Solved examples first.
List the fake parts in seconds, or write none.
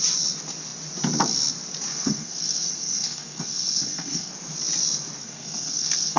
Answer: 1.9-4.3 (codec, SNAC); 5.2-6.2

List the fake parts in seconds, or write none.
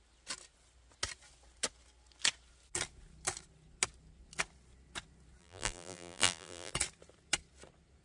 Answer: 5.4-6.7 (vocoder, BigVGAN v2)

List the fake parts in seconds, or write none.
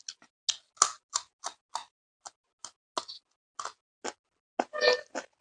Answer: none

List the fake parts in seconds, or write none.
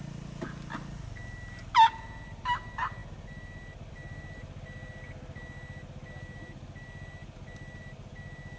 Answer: none